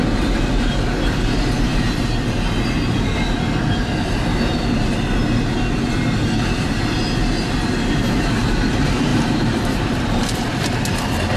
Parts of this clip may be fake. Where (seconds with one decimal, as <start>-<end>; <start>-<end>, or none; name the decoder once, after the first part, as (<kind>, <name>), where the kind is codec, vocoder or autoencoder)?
0.0-0.7 (vocoder, BigVGAN v2); 9.1-10.9